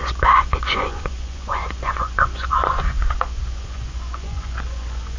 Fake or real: fake